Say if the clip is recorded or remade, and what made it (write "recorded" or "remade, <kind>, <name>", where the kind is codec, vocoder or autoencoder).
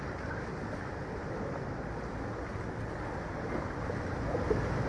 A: recorded